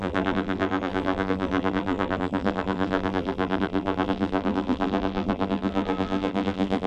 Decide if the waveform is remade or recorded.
remade